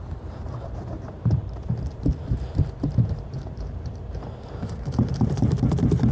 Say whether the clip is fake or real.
fake